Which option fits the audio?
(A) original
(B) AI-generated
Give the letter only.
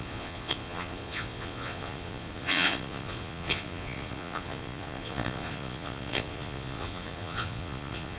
B